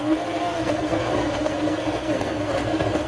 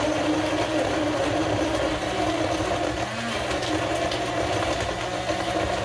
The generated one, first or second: first